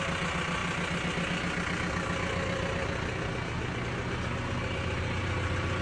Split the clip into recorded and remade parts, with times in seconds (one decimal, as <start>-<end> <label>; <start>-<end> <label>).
0.0-5.8 recorded